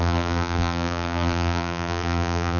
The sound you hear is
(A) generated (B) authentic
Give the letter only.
A